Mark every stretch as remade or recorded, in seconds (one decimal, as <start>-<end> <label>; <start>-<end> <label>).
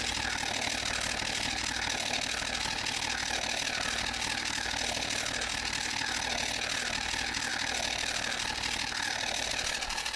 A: 0.0-10.2 recorded